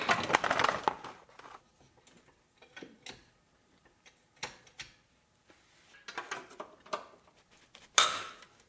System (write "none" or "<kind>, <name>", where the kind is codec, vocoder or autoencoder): none